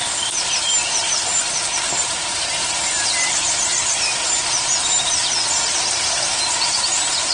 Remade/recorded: recorded